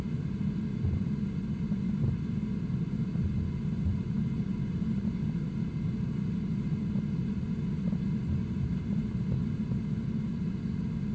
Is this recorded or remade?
recorded